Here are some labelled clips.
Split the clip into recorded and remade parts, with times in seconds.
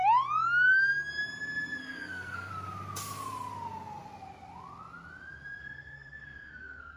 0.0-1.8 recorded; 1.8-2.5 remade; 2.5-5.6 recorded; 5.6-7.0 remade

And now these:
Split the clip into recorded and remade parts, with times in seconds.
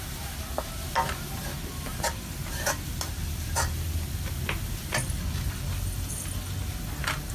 0.0-7.3 recorded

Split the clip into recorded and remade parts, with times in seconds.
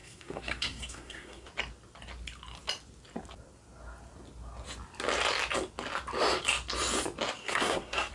0.0-1.5 remade; 1.5-7.4 recorded; 7.4-8.1 remade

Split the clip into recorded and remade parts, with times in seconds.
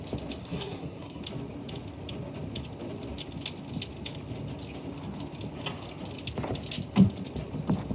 0.0-0.4 recorded; 0.4-1.2 remade; 1.2-7.9 recorded